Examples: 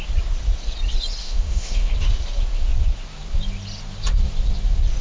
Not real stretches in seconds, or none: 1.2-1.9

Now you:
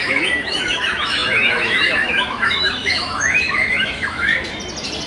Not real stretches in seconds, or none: 0.0-4.3